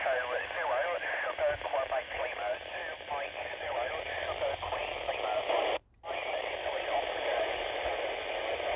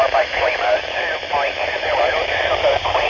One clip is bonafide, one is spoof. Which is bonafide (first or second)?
first